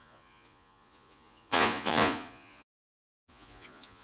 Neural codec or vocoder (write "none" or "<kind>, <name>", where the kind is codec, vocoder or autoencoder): vocoder, Vocos